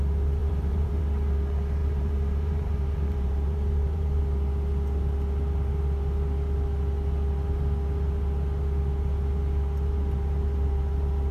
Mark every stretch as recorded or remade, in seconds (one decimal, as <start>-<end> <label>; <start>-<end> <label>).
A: 0.0-0.4 recorded; 0.4-1.0 remade; 1.0-1.8 recorded; 1.8-4.2 remade; 4.2-11.3 recorded

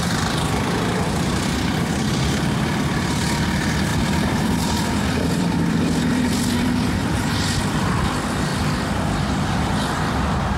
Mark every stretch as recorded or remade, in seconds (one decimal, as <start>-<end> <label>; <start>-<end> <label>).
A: 0.0-8.5 remade; 8.5-9.2 recorded; 9.2-10.6 remade

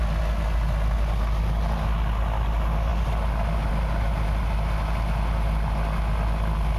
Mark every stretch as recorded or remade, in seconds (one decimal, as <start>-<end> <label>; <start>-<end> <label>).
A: 0.0-6.8 recorded

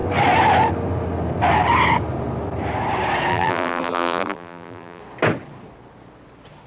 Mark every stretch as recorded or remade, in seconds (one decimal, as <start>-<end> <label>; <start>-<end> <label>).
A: 0.0-3.3 recorded; 3.3-5.0 remade; 5.0-6.7 recorded

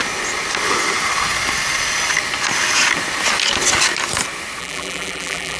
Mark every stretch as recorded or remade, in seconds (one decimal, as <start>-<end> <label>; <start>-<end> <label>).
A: 0.0-4.6 recorded; 4.6-5.6 remade

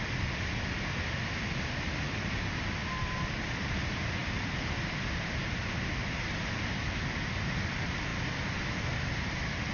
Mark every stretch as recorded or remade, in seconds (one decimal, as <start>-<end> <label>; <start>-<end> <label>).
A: 0.0-2.8 recorded; 2.8-3.4 remade; 3.4-9.7 recorded

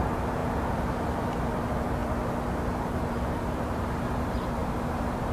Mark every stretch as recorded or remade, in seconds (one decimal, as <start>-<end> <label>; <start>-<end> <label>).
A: 0.0-2.0 remade; 2.0-2.8 recorded; 2.8-5.3 remade